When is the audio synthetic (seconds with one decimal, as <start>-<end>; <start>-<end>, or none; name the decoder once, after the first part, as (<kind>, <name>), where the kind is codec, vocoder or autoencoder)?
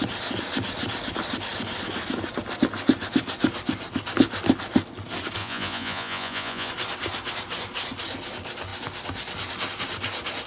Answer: 5.4-6.7 (vocoder, Vocos)